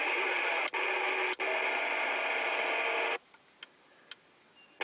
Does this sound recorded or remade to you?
recorded